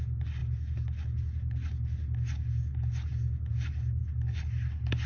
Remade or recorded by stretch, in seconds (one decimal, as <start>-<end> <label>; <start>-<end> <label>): 0.0-5.1 recorded